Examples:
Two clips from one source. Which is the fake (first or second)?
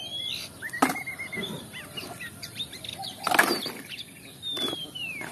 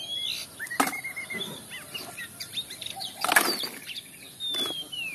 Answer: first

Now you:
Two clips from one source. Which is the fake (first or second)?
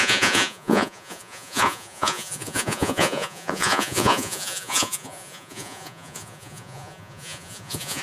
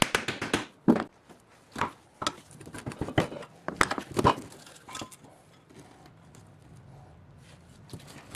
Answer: first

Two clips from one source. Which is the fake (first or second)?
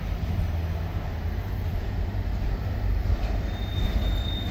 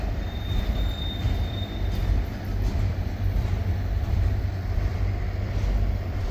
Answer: second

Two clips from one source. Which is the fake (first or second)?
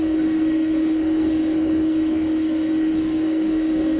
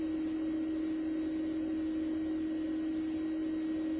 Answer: first